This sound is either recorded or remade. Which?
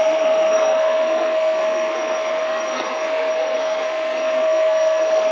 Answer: remade